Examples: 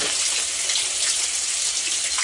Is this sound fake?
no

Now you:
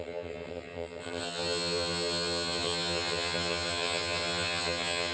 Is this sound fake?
yes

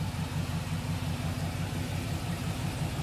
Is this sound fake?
yes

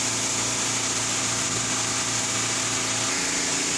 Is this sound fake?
no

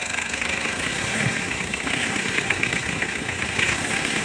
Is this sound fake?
yes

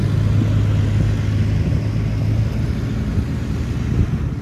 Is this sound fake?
no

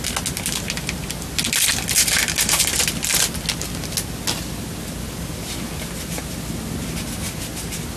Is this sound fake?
no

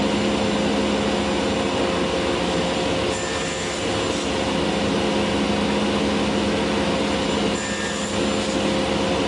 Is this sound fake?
no